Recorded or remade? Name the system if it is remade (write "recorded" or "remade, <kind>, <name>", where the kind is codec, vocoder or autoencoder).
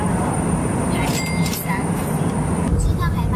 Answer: recorded